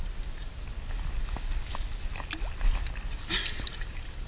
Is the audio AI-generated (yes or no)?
no